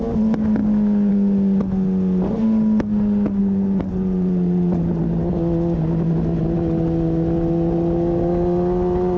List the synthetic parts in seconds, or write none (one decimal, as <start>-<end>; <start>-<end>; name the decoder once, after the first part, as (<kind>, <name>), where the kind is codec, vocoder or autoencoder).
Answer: 3.4-5.0 (vocoder, BigVGAN v2)